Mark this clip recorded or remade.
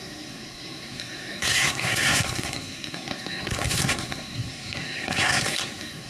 remade